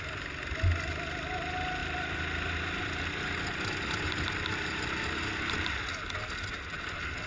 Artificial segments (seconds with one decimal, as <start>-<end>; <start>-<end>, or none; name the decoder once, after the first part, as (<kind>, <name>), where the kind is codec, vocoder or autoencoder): none